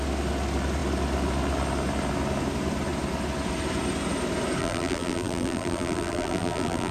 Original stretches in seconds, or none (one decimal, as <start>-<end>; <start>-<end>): 0.0-4.6